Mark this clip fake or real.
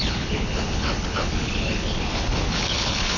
fake